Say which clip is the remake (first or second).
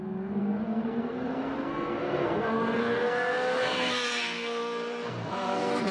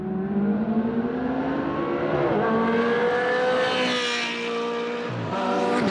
first